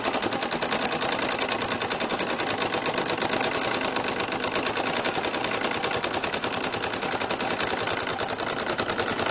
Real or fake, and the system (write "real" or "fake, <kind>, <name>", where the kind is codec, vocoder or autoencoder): real